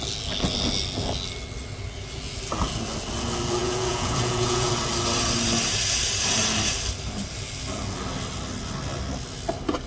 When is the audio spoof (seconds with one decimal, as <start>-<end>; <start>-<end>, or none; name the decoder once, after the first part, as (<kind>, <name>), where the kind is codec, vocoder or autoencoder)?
3.6-4.7 (vocoder, Vocos)